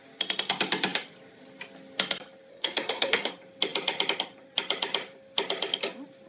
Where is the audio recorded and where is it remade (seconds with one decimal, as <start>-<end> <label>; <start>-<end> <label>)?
0.0-2.5 recorded; 2.5-3.3 remade; 3.3-6.3 recorded